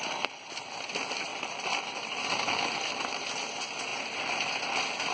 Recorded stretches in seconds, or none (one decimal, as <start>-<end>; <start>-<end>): 0.0-5.1